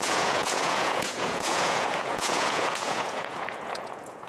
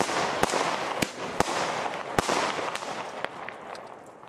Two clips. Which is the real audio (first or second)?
second